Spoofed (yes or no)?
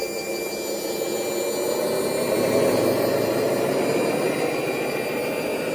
no